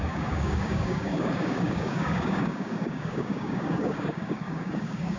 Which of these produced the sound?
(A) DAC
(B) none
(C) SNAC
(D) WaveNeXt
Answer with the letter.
A